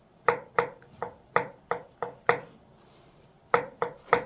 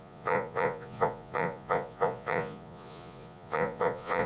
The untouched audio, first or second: first